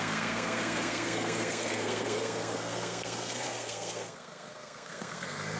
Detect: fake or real fake